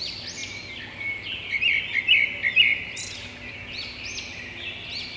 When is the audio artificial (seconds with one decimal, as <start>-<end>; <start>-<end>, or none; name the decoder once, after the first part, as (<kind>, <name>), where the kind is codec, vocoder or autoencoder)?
none